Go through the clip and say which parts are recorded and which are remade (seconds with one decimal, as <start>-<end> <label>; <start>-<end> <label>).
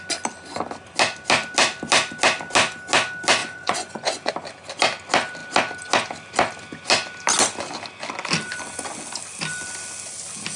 0.0-3.4 recorded; 3.4-4.3 remade; 4.3-10.6 recorded